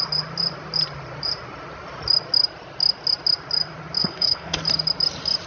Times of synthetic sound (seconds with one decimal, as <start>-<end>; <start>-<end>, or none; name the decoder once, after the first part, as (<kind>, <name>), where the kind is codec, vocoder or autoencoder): 4.0-4.6 (codec, HILCodec)